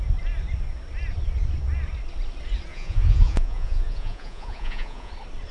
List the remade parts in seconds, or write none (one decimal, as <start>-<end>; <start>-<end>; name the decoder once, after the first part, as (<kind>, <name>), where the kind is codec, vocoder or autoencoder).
2.7-5.1 (vocoder, Vocos)